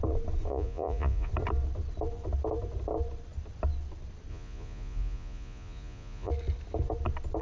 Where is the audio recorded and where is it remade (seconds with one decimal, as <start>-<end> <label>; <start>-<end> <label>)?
0.0-0.5 recorded; 0.5-1.3 remade; 1.3-4.3 recorded; 4.3-6.3 remade; 6.3-7.4 recorded